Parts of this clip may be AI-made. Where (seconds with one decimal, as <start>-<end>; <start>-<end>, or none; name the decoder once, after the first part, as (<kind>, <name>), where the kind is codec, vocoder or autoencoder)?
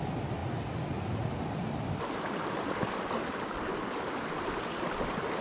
none